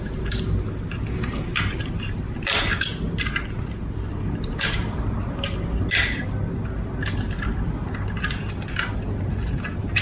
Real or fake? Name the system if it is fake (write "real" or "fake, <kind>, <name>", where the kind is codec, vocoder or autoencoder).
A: real